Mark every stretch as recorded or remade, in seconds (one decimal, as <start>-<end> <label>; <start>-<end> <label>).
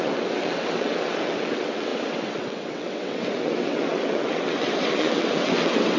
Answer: 0.0-6.0 remade